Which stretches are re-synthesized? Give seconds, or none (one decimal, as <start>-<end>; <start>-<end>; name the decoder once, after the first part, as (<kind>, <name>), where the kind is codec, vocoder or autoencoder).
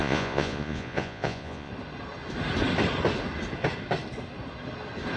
0.0-1.7 (vocoder, Vocos)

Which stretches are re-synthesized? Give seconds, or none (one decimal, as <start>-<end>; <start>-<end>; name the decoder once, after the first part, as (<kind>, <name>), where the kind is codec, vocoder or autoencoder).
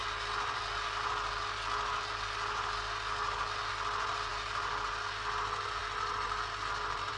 none